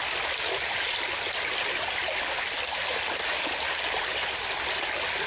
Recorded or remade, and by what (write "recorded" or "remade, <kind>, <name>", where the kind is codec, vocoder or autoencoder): recorded